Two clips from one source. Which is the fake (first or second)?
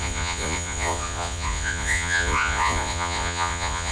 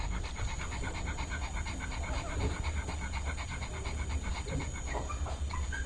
first